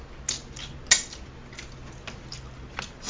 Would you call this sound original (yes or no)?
yes